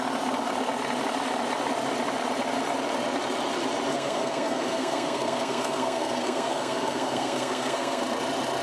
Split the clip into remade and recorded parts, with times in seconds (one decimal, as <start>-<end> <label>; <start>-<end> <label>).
0.0-3.9 recorded; 3.9-8.0 remade; 8.0-8.6 recorded